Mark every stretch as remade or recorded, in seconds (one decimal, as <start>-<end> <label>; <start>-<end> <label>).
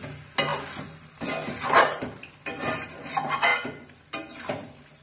0.0-0.5 recorded; 0.5-3.0 remade; 3.0-3.5 recorded; 3.5-4.5 remade; 4.5-5.0 recorded